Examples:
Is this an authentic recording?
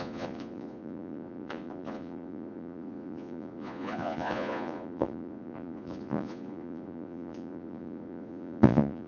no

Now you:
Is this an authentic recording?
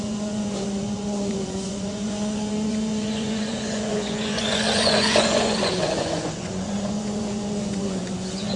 no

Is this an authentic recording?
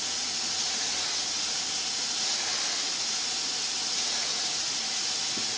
no